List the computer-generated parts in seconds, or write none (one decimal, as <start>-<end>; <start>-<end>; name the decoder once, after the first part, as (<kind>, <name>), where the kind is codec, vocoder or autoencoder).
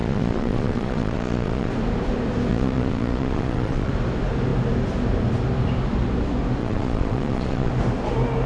0.0-1.7 (vocoder, Vocos); 2.5-3.9; 6.6-7.7